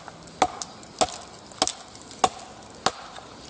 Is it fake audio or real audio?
real